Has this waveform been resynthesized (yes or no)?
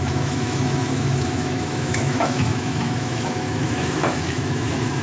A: yes